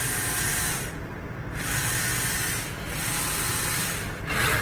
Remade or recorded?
recorded